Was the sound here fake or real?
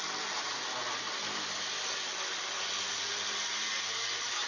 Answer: real